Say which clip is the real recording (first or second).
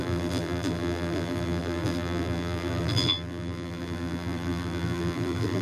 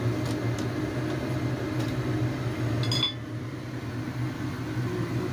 second